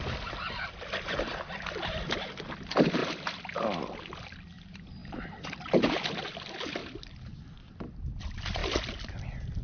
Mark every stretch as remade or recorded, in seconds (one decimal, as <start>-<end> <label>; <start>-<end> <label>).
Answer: 0.0-3.0 recorded; 3.0-4.2 remade; 4.2-5.0 recorded; 5.0-6.0 remade; 6.0-6.8 recorded; 6.8-8.1 remade; 8.1-9.6 recorded